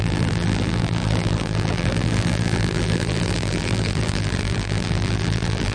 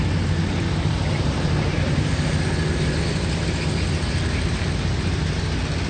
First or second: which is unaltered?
second